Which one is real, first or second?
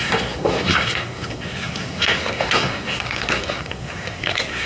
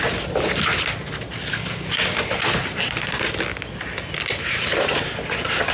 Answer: second